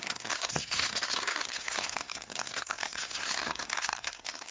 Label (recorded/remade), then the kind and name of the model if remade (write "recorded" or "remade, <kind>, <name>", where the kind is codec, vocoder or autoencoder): remade, codec, SNAC